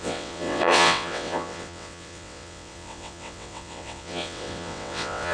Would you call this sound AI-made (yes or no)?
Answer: yes